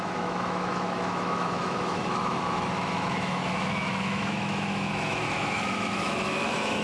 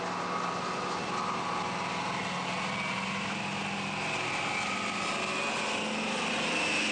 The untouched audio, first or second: second